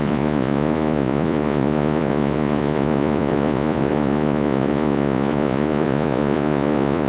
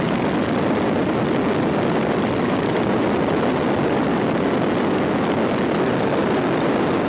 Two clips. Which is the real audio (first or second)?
second